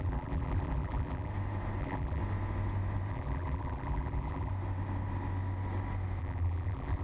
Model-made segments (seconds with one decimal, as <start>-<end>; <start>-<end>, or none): 0.0-1.3; 1.8-2.2; 3.1-4.5; 6.2-7.0